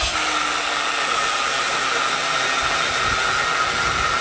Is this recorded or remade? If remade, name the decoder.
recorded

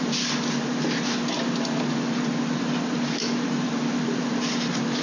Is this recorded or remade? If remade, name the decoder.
remade, vocoder, BigVGAN v2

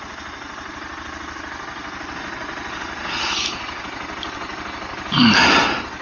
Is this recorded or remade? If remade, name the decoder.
recorded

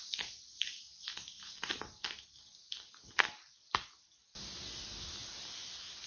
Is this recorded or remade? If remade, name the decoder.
recorded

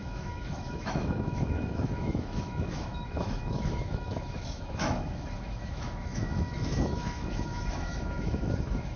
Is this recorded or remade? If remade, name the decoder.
remade, autoencoder, DAC-VAE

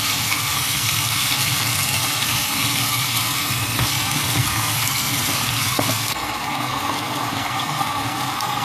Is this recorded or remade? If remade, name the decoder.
remade, codec, SNAC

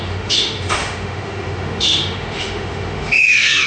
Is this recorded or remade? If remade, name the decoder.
remade, autoencoder, DAC-VAE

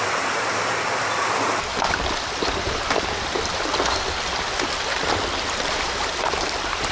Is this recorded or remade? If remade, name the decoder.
remade, vocoder, BigVGAN v2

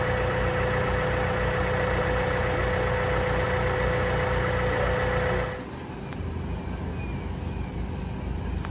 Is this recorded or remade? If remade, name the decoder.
recorded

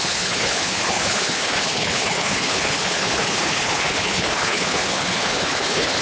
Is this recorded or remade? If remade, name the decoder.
remade, codec, HILCodec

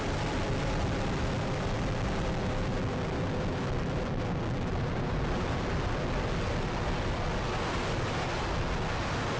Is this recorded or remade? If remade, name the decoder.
recorded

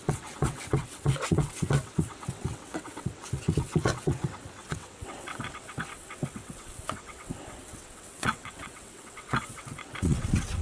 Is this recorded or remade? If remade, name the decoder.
remade, vocoder, WaveNeXt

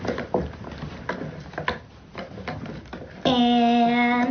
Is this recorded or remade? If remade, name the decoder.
recorded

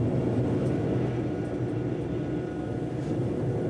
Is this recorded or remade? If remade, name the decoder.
recorded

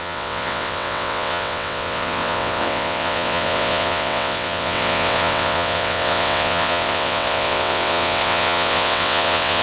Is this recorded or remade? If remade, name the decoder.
remade, vocoder, WaveNeXt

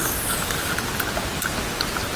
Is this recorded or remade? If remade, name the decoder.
recorded